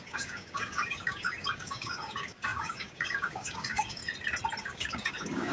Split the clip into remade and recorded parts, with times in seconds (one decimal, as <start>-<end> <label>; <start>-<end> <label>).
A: 0.0-4.0 remade; 4.0-4.6 recorded; 4.6-5.5 remade